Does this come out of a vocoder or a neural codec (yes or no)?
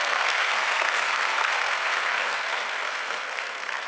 yes